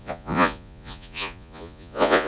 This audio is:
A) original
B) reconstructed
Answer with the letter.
B